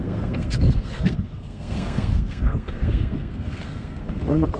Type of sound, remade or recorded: remade